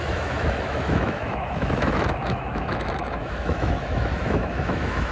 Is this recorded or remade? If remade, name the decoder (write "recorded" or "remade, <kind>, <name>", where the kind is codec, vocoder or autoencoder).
remade, autoencoder, DAC-VAE